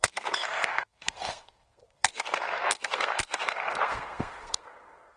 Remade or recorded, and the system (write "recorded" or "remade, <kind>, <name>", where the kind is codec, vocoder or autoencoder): remade, codec, SNAC